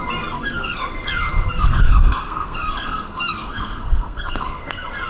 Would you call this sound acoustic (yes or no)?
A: no